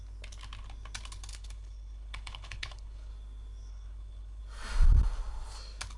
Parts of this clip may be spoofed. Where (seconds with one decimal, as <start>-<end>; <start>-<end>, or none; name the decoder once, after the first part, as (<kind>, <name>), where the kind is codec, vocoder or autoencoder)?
1.3-3.1 (codec, HILCodec); 3.7-4.4